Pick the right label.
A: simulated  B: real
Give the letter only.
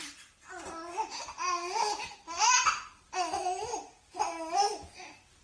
B